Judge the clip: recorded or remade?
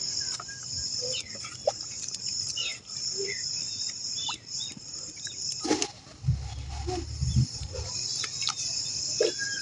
recorded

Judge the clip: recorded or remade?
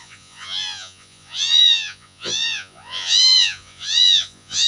remade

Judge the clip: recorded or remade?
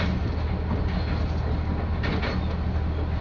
recorded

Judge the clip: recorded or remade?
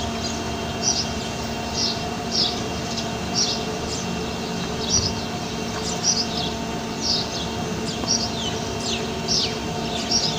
recorded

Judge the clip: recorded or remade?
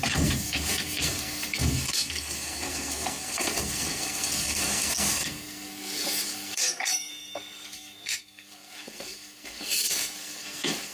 remade